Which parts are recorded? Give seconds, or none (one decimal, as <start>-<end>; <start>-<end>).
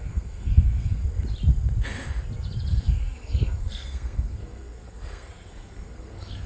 1.0-2.7